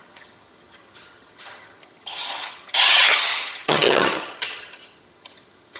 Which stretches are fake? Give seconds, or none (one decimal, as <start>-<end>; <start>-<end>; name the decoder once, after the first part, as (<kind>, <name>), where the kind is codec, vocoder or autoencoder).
0.0-5.8 (vocoder, HiFi-GAN)